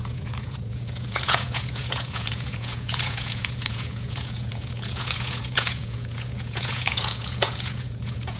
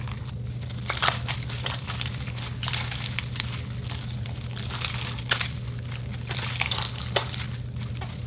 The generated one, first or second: first